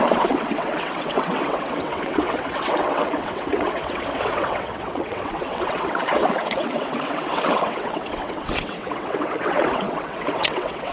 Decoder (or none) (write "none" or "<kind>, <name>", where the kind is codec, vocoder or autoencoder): vocoder, WaveNeXt